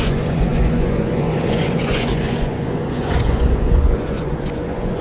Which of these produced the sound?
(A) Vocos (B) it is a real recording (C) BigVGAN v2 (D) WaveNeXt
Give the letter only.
A